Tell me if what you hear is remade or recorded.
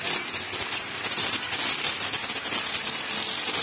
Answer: recorded